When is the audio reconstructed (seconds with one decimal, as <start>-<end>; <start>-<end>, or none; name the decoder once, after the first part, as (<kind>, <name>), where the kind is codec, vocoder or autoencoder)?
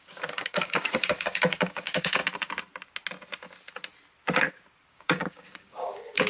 0.0-2.2 (codec, DAC); 4.9-6.3